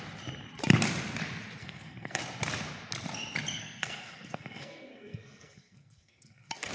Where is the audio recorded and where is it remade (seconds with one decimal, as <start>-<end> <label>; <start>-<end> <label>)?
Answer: 0.0-1.6 recorded; 1.6-2.2 remade; 2.2-3.6 recorded; 3.6-6.7 remade

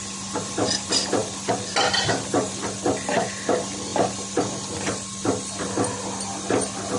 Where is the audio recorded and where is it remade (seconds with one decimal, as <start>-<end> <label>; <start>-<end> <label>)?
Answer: 0.0-7.0 recorded

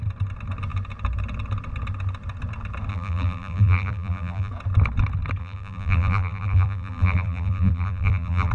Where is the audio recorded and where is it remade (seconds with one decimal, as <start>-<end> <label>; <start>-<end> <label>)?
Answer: 0.0-2.9 recorded; 2.9-4.5 remade; 4.5-5.4 recorded; 5.4-8.5 remade